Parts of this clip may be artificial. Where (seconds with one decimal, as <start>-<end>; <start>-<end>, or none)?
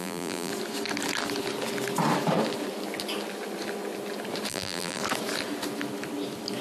0.0-0.5; 4.5-5.0